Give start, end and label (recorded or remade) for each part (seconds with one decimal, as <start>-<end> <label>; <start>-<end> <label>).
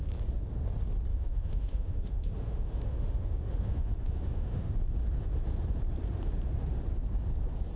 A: 0.0-1.1 recorded; 1.1-4.8 remade; 4.8-7.8 recorded